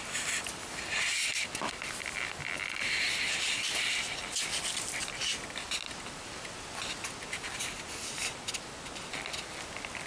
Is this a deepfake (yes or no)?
no